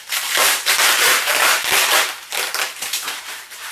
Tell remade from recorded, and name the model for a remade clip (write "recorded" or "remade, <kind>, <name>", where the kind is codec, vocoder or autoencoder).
remade, vocoder, BigVGAN v2